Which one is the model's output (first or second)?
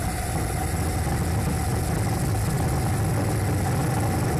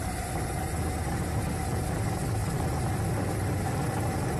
second